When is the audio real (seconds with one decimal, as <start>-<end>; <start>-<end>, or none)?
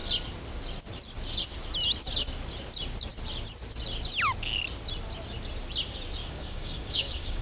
0.0-6.2